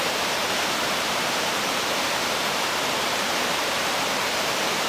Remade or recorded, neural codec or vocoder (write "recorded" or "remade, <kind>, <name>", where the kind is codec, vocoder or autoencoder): remade, vocoder, BigVGAN v2